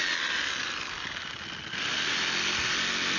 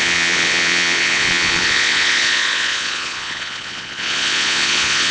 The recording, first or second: first